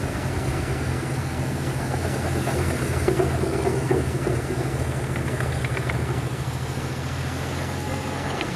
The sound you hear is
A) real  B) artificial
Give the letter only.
B